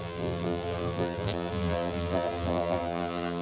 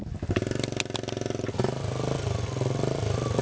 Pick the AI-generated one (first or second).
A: first